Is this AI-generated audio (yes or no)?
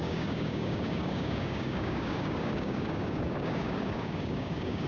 yes